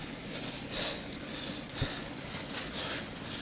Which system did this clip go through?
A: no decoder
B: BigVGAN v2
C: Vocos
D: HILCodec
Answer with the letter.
C